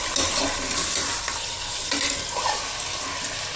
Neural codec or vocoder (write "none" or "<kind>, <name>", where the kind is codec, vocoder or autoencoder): none